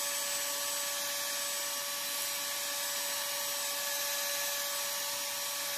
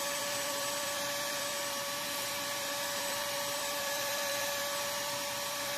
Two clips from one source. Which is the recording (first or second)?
first